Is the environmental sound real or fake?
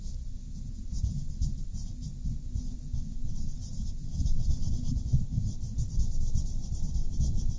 real